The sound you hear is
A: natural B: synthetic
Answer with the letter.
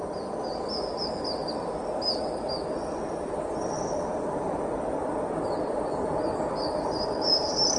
A